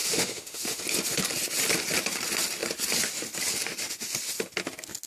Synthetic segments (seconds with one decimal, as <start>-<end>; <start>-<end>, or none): 0.0-0.8